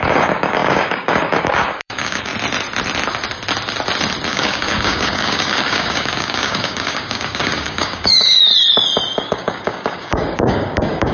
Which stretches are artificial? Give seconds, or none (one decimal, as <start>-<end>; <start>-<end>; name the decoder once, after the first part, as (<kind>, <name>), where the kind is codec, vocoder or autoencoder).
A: 0.0-2.3 (codec, DAC); 4.3-8.5; 9.2-11.1